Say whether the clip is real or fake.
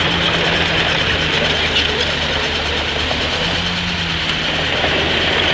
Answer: real